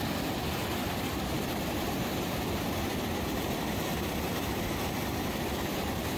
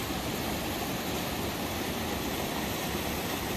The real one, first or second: second